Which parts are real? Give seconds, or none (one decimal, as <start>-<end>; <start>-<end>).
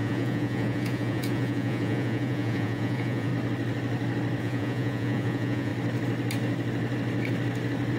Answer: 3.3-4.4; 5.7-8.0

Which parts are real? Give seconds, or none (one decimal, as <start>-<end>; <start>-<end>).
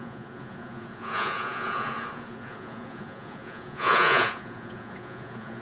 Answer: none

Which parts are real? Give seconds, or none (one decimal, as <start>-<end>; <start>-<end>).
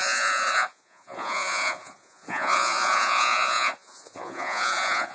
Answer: none